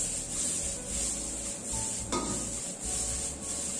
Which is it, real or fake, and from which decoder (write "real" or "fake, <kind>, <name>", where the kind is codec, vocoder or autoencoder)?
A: real